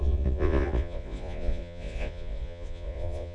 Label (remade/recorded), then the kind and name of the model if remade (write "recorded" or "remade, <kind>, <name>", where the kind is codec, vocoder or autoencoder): remade, vocoder, Vocos